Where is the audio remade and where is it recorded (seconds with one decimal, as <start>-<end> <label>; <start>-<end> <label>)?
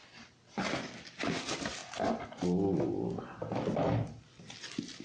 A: 0.0-5.0 recorded